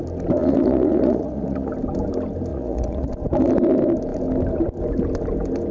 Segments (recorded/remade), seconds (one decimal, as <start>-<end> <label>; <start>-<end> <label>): 0.0-0.4 recorded; 0.4-1.7 remade; 1.7-2.5 recorded; 2.5-3.1 remade; 3.1-5.7 recorded